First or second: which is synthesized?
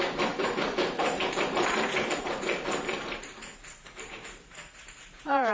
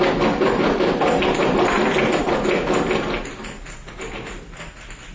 first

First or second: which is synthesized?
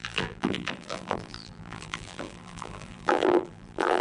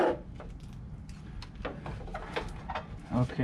first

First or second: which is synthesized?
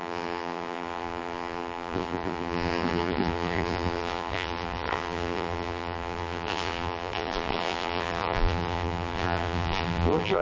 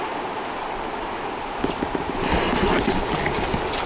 first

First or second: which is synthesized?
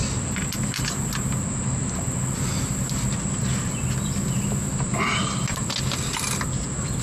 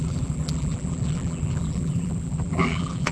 second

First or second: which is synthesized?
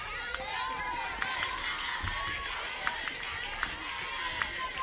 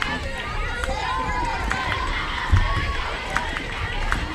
second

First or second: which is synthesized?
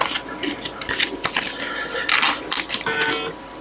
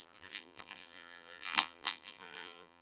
second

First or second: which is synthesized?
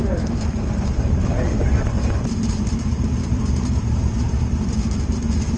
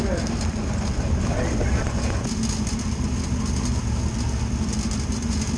first